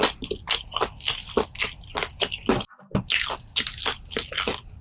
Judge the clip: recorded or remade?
recorded